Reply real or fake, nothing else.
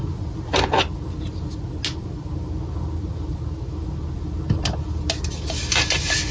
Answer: real